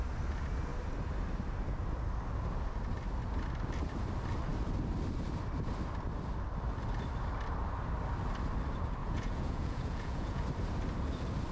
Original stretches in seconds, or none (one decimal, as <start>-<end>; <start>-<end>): 0.0-9.0; 10.4-11.5